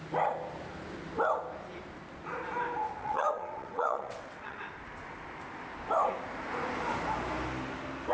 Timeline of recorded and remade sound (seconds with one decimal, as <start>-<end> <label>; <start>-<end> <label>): 0.0-3.0 recorded; 3.0-4.6 remade; 4.6-8.1 recorded